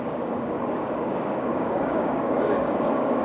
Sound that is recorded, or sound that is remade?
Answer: remade